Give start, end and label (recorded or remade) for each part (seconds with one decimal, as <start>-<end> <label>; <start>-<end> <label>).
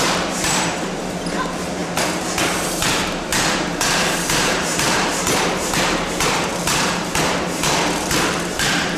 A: 0.0-1.8 remade; 1.8-2.4 recorded; 2.4-9.0 remade